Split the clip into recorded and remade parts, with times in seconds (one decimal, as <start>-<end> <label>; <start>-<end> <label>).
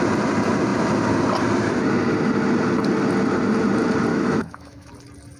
0.0-4.1 recorded; 4.1-4.9 remade; 4.9-5.4 recorded